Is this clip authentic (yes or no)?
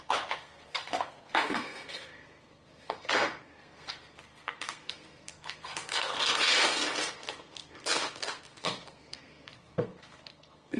no